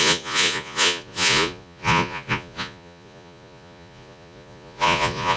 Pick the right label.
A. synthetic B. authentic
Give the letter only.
A